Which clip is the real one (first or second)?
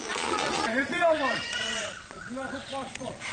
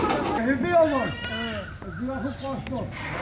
second